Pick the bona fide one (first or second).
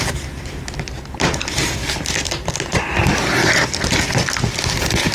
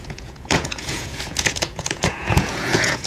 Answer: first